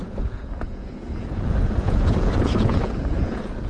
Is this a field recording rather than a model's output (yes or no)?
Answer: no